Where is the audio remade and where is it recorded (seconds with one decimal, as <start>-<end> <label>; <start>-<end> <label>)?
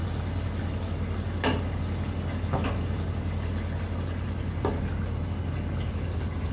0.0-6.5 recorded